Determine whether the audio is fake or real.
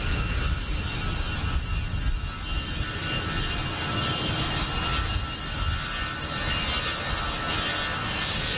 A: real